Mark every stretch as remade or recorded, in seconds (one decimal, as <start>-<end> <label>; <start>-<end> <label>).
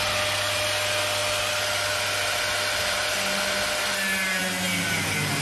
0.0-5.4 recorded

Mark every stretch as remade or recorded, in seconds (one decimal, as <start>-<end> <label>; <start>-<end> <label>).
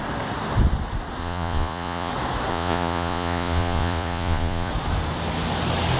0.0-1.2 recorded; 1.2-2.1 remade; 2.1-2.5 recorded; 2.5-4.7 remade; 4.7-6.0 recorded